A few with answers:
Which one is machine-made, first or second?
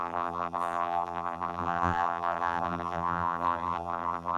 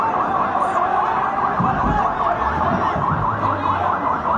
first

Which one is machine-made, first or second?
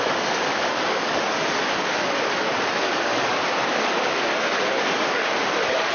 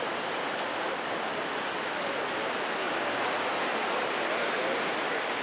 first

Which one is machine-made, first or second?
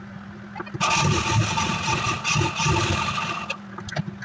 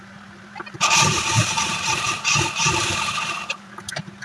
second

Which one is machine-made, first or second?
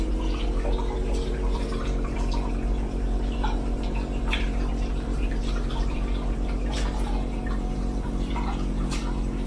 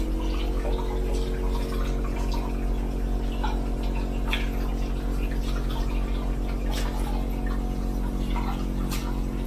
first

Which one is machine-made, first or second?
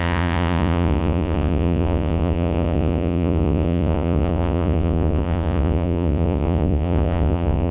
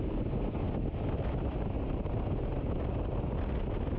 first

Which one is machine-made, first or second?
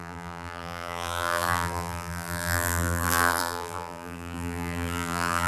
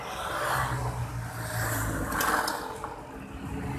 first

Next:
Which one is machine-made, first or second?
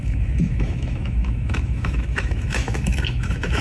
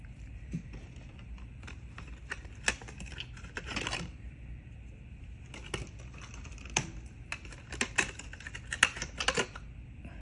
first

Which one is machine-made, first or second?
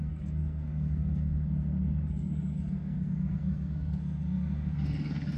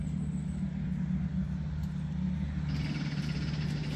first